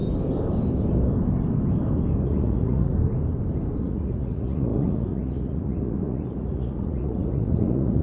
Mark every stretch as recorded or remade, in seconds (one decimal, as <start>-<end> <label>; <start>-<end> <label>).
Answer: 0.0-2.2 recorded; 2.2-2.9 remade; 2.9-3.8 recorded; 3.8-8.0 remade